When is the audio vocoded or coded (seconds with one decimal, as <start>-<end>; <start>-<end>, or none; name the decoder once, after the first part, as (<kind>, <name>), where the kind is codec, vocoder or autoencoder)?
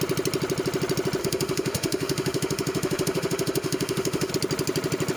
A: 1.2-4.3 (autoencoder, DAC-VAE)